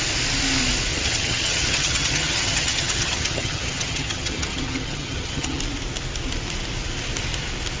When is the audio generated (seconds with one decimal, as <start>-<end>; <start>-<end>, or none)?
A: 0.9-5.6